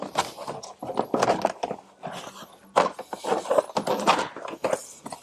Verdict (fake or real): real